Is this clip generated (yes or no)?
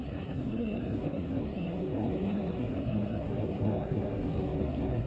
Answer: yes